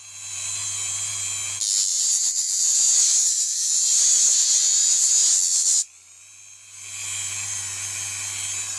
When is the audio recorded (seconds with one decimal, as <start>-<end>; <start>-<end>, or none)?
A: 0.0-1.9; 5.3-8.8